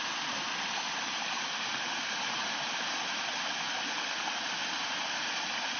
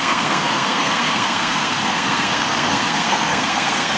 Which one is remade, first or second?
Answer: second